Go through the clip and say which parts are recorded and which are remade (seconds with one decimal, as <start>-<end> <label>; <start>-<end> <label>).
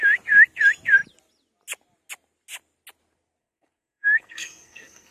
0.0-3.4 recorded; 3.4-5.1 remade